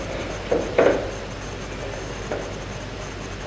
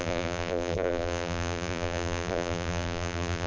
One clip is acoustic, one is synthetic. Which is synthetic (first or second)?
second